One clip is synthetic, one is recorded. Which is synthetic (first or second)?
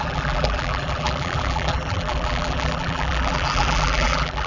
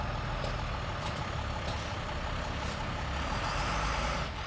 first